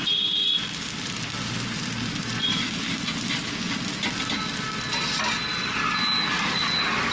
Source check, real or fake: real